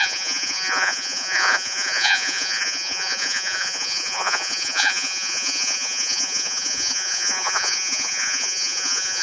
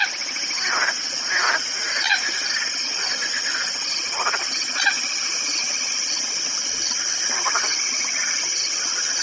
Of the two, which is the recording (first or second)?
second